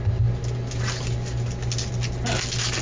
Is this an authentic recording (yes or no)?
yes